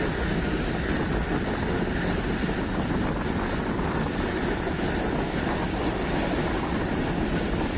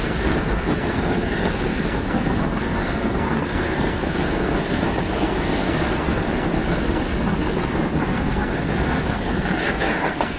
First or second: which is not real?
second